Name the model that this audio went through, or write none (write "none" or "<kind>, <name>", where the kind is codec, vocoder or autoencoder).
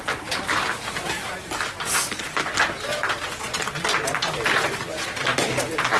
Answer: none